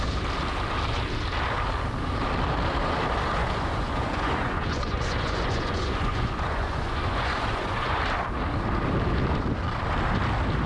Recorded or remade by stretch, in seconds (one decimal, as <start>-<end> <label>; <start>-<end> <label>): 0.0-3.4 recorded; 3.4-8.0 remade; 8.0-10.7 recorded